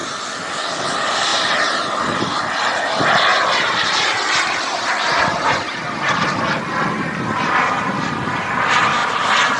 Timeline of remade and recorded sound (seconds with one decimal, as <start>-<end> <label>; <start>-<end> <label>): 0.0-1.3 recorded; 1.3-2.0 remade; 2.0-3.3 recorded; 3.3-6.6 remade; 6.6-9.0 recorded; 9.0-9.6 remade